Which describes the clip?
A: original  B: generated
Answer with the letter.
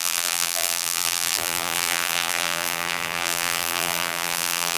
B